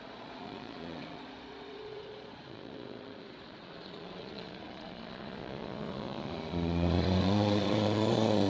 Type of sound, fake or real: fake